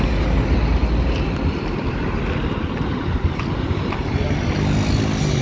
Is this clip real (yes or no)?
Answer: yes